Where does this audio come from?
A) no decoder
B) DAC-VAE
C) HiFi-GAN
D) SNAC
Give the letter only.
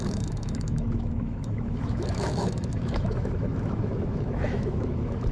B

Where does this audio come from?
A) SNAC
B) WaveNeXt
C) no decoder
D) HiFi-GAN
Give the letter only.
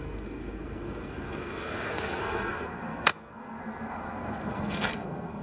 A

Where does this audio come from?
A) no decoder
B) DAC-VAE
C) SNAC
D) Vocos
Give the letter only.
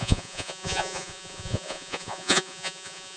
D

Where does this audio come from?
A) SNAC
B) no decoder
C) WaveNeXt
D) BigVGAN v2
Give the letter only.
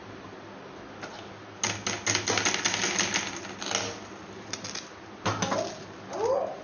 B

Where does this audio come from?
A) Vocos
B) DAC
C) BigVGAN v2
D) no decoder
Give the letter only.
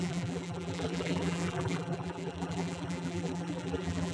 C